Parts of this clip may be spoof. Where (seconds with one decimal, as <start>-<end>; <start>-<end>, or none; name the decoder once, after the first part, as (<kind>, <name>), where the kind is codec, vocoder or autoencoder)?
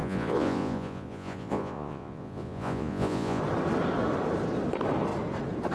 0.0-3.4 (vocoder, Vocos)